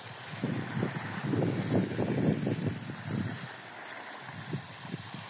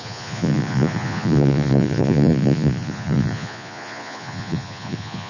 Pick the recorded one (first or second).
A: first